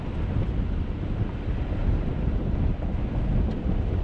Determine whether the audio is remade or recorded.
recorded